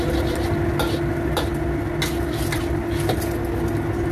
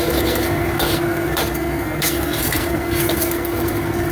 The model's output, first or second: second